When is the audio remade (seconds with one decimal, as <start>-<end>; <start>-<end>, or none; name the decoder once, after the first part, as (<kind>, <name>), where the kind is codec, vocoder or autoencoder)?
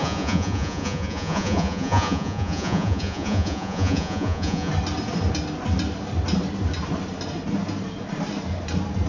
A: 0.0-4.7 (vocoder, Vocos)